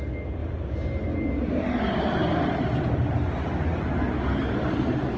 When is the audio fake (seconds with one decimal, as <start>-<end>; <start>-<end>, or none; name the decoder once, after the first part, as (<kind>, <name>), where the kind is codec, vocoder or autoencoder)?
none